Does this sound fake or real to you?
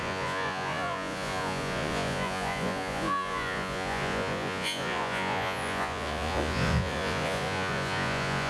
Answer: fake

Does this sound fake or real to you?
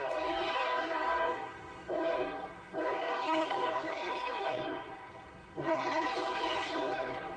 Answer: fake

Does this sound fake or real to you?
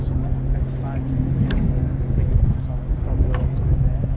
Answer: real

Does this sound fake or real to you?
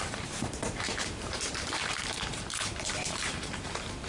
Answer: fake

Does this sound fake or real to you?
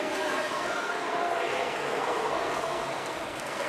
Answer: fake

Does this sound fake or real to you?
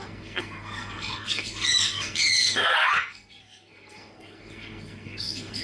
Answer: fake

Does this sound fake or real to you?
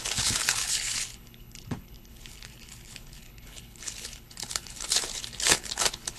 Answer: fake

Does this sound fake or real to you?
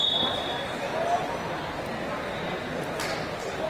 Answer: real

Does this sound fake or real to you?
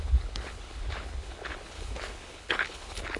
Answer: fake